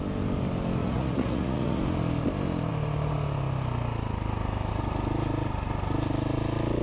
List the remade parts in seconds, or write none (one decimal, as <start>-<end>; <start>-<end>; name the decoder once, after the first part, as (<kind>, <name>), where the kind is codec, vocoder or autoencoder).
0.8-1.8 (vocoder, Vocos)

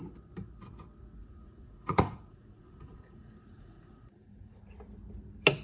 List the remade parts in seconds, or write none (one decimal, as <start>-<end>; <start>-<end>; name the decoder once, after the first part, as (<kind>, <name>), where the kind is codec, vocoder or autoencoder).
1.2-4.6 (vocoder, Vocos)

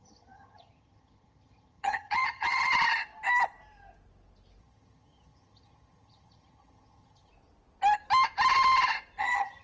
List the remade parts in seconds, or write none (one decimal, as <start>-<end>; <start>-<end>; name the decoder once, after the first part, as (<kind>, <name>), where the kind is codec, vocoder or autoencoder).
0.0-2.7 (vocoder, HiFi-GAN); 4.6-7.3; 9.2-9.6

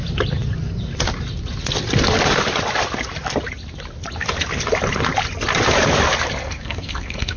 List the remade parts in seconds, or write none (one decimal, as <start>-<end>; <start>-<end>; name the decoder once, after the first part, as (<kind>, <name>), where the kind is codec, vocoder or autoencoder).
6.4-7.4 (codec, SNAC)

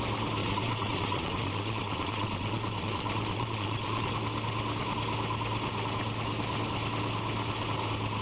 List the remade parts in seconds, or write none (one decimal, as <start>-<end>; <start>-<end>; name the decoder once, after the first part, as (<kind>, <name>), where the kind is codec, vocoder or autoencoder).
0.4-4.1 (vocoder, Vocos)

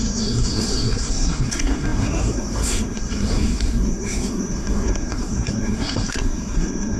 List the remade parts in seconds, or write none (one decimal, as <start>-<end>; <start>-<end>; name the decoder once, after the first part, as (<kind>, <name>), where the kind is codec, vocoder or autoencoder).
0.0-7.0 (codec, SNAC)

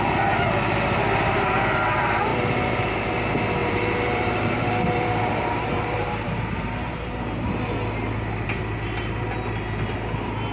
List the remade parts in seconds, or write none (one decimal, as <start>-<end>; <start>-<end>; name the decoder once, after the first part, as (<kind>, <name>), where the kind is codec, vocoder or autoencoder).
3.6-7.5 (vocoder, BigVGAN v2)